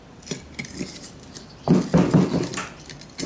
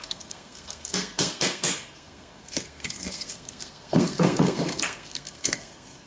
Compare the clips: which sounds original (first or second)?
first